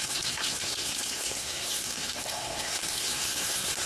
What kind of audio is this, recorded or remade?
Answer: remade